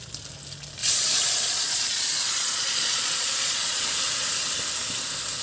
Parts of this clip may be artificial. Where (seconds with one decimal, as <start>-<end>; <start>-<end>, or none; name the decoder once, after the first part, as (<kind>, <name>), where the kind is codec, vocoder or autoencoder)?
0.8-3.9 (vocoder, Vocos)